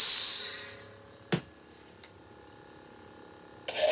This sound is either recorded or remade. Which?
recorded